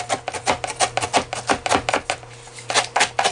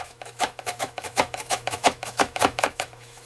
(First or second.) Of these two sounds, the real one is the first